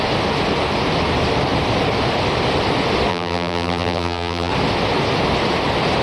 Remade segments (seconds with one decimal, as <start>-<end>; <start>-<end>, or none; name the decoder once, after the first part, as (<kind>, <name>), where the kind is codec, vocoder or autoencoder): 3.1-4.5 (vocoder, BigVGAN v2)